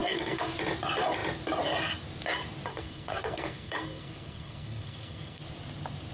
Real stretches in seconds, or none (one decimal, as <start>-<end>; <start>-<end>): 0.5-2.7; 5.4-6.1